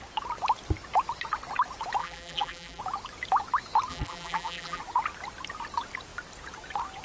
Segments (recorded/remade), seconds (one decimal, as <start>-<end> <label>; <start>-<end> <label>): 0.0-2.0 recorded; 2.0-2.8 remade; 2.8-3.9 recorded; 3.9-4.8 remade; 4.8-7.0 recorded